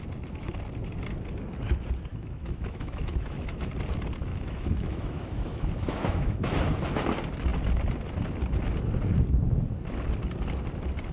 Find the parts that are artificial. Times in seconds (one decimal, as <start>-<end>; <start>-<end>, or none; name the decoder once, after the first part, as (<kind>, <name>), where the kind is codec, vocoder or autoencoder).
2.1-3.7 (autoencoder, DAC-VAE); 4.3-6.5